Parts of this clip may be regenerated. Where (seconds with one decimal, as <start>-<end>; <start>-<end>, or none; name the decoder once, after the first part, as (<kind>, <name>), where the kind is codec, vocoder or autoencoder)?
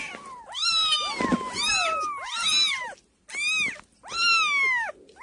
none